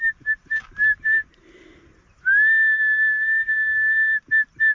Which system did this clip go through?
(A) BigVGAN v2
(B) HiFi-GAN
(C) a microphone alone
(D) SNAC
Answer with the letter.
C